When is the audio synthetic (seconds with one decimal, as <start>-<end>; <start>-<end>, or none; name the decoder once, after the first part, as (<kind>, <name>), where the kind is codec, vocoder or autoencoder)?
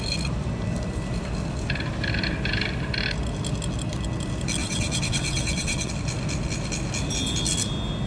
4.6-5.9 (vocoder, WaveNeXt)